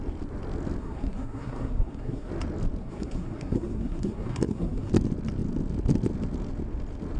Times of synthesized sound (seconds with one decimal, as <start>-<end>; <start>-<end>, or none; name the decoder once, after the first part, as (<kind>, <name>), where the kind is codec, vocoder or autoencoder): 0.8-2.3 (codec, SNAC); 2.8-4.9